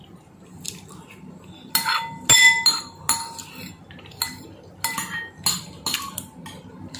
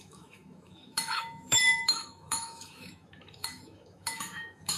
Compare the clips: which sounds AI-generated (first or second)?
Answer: second